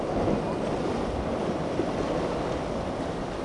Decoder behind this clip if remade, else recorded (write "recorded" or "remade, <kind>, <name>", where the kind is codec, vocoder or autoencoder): recorded